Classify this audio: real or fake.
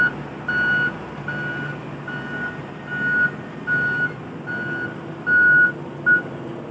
real